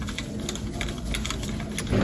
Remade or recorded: recorded